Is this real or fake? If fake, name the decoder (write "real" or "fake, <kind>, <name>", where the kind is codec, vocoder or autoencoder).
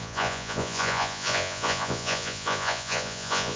fake, vocoder, Vocos